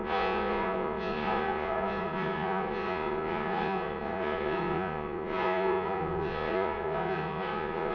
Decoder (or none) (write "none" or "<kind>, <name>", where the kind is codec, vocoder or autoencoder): vocoder, Vocos